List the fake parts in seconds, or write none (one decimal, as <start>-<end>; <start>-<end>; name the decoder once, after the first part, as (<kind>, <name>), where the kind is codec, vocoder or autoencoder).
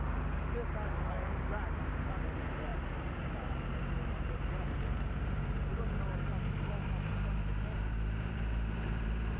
0.0-0.6 (vocoder, BigVGAN v2); 1.1-2.7; 3.8-9.4